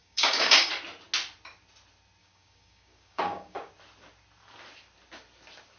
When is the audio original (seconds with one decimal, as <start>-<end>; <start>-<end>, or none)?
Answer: 0.7-2.2; 3.7-5.8